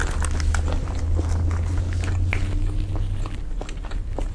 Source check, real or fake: real